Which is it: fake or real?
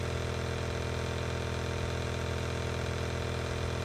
real